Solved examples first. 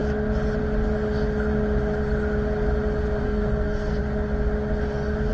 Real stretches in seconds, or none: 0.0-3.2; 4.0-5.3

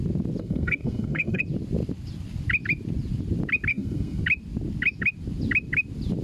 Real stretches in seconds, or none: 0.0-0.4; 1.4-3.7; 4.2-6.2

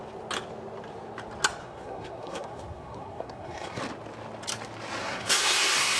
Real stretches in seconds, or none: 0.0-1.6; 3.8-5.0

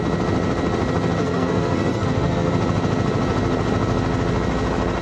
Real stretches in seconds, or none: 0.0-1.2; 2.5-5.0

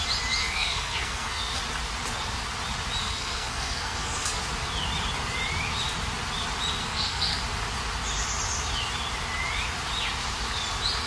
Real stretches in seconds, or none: 0.0-0.4; 1.6-3.0; 4.4-6.8; 7.4-11.1

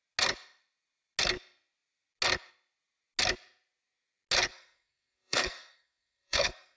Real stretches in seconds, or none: 0.0-4.5